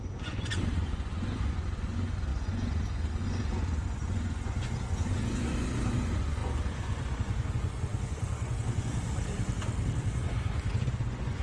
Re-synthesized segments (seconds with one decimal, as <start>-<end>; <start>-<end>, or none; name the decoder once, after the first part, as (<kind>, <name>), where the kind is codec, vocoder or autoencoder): 0.0-9.1 (vocoder, Vocos); 10.1-11.4